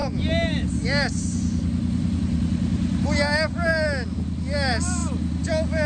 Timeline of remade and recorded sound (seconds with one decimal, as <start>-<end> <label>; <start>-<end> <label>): 0.0-5.9 recorded